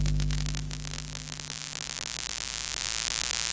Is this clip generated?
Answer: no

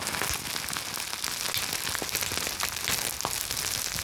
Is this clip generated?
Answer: no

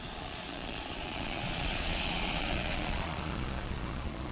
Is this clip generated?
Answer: yes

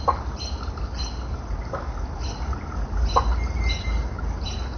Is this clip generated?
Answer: no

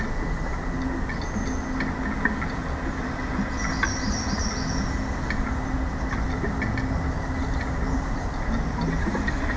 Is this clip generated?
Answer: no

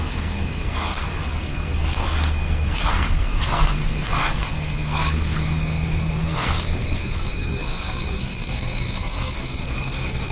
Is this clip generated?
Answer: yes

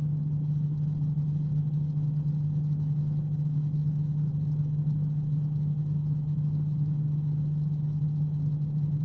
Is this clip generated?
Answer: no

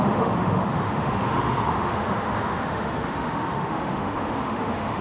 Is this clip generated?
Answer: yes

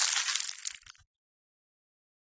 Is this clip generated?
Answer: no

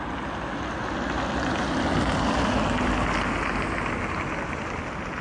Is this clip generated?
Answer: no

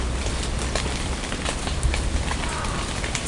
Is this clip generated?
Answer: no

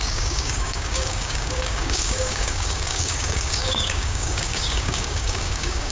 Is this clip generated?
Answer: yes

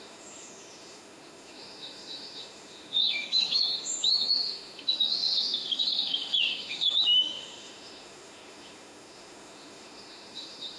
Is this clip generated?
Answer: yes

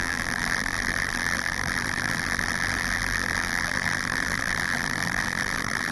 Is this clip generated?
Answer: yes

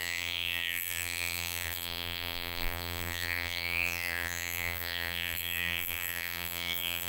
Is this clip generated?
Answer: yes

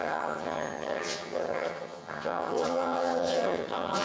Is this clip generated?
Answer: yes